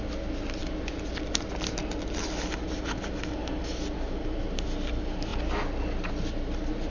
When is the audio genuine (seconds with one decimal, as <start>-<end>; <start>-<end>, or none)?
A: 0.0-6.9